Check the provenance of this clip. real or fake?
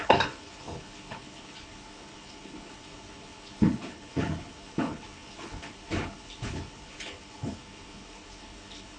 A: fake